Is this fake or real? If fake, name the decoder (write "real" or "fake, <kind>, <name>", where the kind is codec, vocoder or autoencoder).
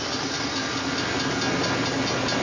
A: real